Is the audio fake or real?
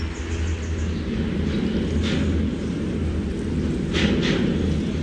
real